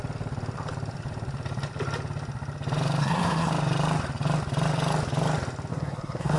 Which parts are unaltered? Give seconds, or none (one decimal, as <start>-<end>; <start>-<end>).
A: 0.0-3.0; 3.5-5.7